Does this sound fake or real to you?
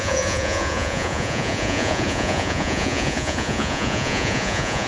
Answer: fake